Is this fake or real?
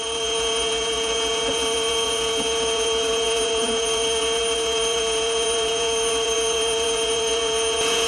fake